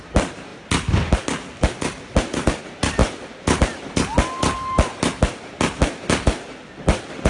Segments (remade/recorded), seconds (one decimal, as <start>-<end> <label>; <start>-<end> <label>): 0.0-7.3 recorded